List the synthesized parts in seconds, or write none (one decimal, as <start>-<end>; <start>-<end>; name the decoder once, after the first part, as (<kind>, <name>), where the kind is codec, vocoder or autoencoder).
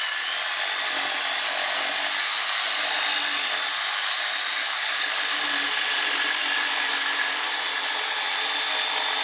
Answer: 4.6-5.2 (codec, HILCodec)